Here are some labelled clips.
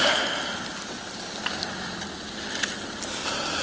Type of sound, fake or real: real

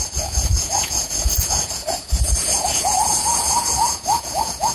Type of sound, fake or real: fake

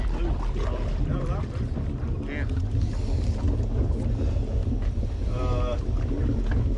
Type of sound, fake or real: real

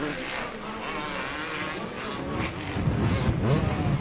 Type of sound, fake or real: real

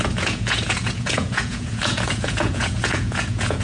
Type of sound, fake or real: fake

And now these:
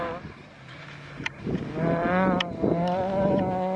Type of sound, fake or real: real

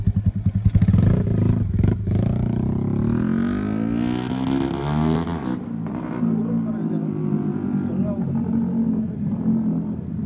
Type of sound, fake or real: real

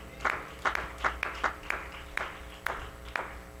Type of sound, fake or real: real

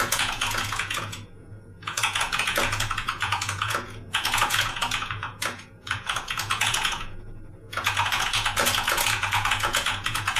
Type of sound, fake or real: fake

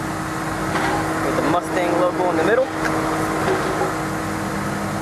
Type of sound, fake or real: real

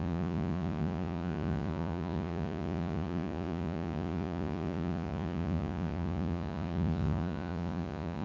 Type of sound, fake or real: fake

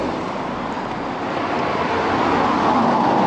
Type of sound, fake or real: real